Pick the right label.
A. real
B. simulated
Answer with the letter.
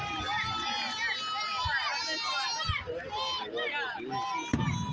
A